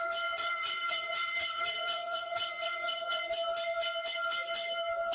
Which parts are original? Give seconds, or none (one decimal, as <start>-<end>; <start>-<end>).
0.0-0.4; 3.3-5.1